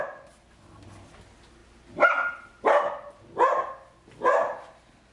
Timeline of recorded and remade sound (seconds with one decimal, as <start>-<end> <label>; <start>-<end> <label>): 0.0-5.1 recorded